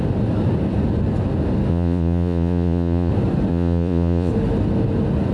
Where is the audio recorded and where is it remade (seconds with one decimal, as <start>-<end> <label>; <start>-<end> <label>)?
0.0-1.7 recorded; 1.7-3.1 remade; 3.1-3.5 recorded; 3.5-4.3 remade; 4.3-5.3 recorded